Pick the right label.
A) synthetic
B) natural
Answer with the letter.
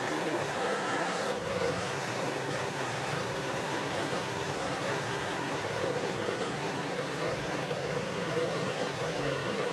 A